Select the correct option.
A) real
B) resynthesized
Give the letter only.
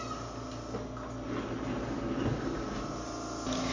A